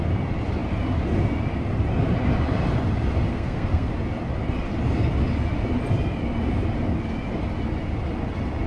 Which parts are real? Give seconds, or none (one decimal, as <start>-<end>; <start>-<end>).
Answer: 0.0-3.3; 3.9-8.7